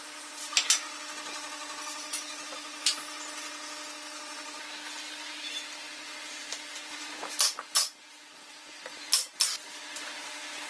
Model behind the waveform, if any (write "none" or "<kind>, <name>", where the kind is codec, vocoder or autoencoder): none